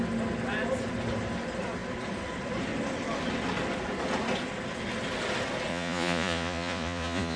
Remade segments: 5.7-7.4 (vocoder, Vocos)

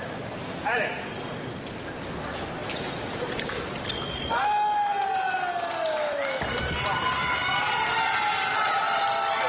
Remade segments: 2.6-4.2 (vocoder, BigVGAN v2)

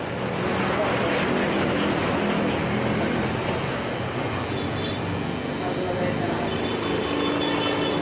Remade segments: none

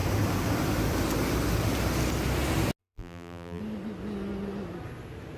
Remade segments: 2.8-3.6 (vocoder, BigVGAN v2)

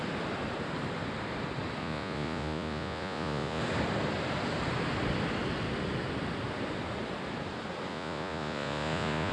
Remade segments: 1.8-3.6 (vocoder, Vocos); 7.9-9.3

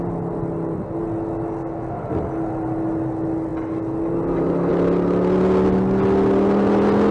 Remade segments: none

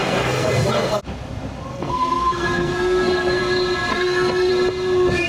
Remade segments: 0.0-1.0 (codec, SNAC); 1.7-3.4; 3.9-4.5

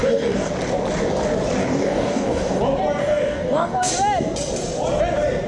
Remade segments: 0.0-0.5 (codec, DAC); 1.6-2.6; 3.0-3.9